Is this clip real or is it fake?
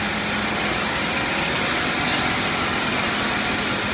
real